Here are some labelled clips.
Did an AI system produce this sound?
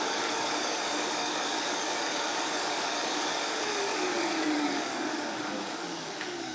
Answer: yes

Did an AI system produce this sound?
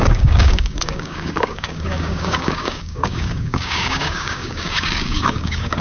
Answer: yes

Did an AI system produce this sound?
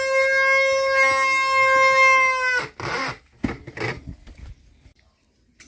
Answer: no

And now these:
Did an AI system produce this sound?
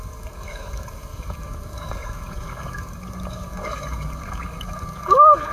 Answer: yes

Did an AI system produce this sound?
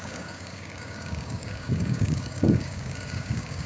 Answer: yes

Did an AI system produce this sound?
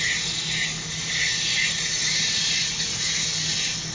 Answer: no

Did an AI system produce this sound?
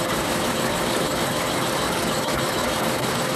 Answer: yes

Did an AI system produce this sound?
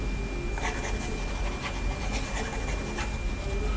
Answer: no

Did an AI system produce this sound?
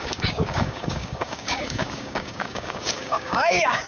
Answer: yes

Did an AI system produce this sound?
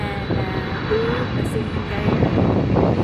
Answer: no